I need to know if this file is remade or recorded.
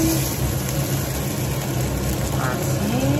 recorded